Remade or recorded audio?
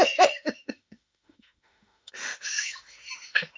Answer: remade